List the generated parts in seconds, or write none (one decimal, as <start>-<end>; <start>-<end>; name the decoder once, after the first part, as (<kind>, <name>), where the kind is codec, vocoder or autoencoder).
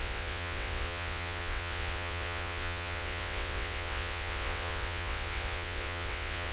0.0-6.5 (vocoder, WaveNeXt)